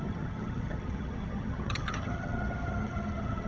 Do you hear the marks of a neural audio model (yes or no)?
yes